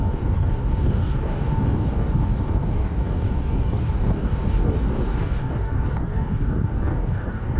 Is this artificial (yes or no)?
yes